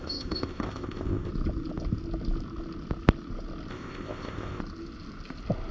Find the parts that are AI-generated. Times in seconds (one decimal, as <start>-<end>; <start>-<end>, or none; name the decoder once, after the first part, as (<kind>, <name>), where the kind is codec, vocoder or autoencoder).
0.0-1.3 (codec, ZipCodec); 3.7-4.6